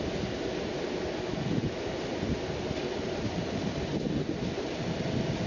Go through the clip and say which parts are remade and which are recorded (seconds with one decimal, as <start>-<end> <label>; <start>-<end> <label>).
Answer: 0.0-5.5 recorded